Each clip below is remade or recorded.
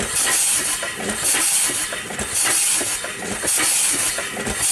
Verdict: recorded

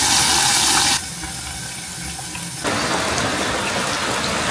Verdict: recorded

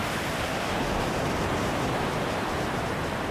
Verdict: recorded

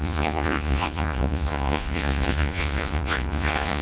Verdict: remade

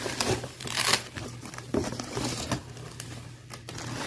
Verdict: recorded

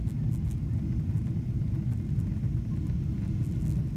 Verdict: recorded